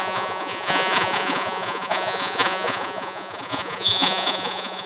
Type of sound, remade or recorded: remade